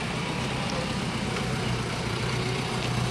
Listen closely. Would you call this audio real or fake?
fake